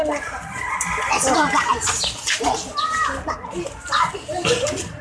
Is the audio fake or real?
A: fake